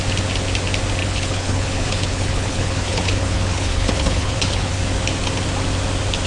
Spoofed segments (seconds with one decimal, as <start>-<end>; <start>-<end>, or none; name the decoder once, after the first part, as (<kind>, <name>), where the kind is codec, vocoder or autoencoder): 1.0-4.8 (codec, HILCodec)